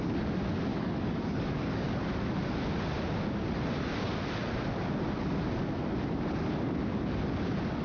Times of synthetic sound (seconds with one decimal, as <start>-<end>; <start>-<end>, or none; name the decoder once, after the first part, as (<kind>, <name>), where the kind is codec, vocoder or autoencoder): 0.7-1.9 (codec, DAC)